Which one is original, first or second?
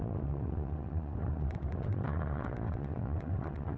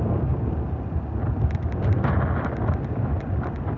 second